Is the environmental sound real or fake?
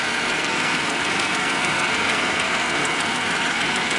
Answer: fake